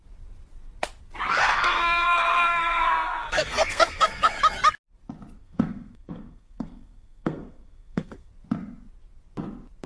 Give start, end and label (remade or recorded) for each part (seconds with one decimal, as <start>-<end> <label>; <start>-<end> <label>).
0.0-1.4 recorded; 1.4-4.4 remade; 4.4-5.4 recorded; 5.4-8.3 remade; 8.3-9.9 recorded